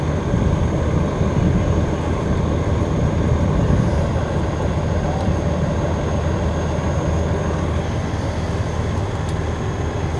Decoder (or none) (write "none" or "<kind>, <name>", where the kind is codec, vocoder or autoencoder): none